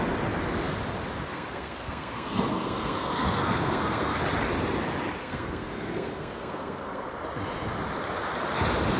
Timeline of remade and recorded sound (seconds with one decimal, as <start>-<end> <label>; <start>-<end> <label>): 0.0-1.3 recorded; 1.3-4.2 remade; 4.2-5.2 recorded; 5.2-7.1 remade; 7.1-9.0 recorded

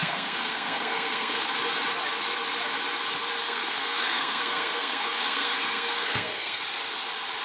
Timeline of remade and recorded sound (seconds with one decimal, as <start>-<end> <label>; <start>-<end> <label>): 0.0-1.5 remade; 1.5-3.4 recorded; 3.4-6.6 remade; 6.6-7.4 recorded

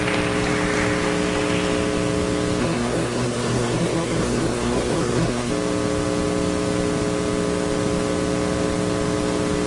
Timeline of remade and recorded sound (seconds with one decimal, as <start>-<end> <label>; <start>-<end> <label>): 0.0-2.6 recorded; 2.6-5.5 remade; 5.5-9.7 recorded

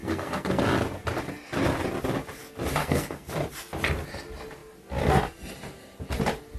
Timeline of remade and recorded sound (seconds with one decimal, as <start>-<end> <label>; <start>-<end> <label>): 0.0-0.6 remade; 0.6-2.8 recorded; 2.8-3.3 remade; 3.3-6.6 recorded

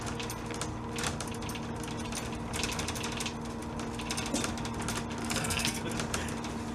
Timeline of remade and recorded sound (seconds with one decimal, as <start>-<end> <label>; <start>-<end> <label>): 0.0-5.2 recorded; 5.2-5.8 remade; 5.8-6.7 recorded

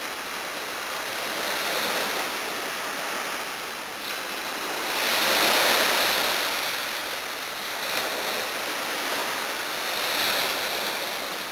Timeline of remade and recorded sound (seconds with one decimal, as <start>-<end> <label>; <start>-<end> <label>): 0.0-11.5 recorded

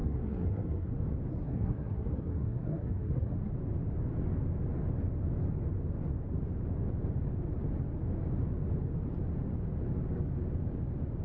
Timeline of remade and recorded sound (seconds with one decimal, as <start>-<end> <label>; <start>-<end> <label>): 0.0-0.9 remade; 0.9-1.3 recorded; 1.3-3.5 remade; 3.5-11.2 recorded

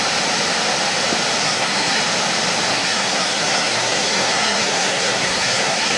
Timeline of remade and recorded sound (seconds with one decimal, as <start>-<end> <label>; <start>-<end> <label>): 0.0-1.4 recorded; 1.4-2.0 remade; 2.0-2.7 recorded; 2.7-6.0 remade